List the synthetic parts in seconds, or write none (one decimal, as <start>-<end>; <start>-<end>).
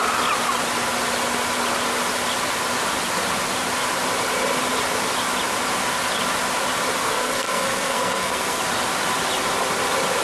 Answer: 7.0-8.6